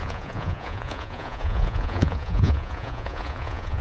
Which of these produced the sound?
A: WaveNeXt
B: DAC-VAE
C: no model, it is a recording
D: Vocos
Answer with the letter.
D